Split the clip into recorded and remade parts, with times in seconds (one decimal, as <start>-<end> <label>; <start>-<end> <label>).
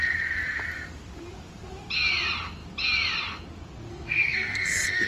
0.0-3.9 recorded; 3.9-5.1 remade